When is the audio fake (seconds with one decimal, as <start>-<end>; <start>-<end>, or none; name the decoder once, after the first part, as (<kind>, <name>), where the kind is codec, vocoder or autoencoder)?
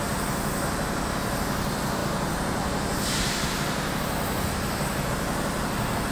none